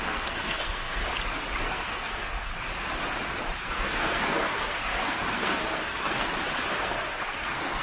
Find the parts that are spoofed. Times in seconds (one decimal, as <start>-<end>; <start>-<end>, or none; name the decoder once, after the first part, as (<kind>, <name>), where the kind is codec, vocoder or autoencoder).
0.0-1.0 (codec, SNAC); 1.6-2.5; 3.6-6.3; 6.8-7.8